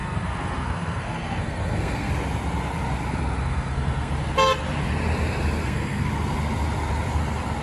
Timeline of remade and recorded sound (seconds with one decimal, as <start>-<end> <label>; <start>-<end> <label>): 0.0-2.1 remade; 2.1-3.4 recorded; 3.4-4.1 remade; 4.1-5.6 recorded; 5.6-6.1 remade; 6.1-7.6 recorded